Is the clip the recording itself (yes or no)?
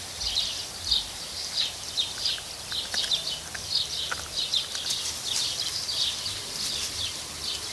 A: yes